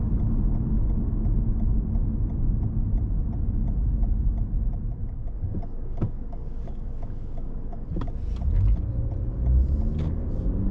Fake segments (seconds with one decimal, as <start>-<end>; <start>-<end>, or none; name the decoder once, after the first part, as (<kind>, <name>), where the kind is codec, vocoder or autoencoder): 5.0-8.1 (codec, DAC)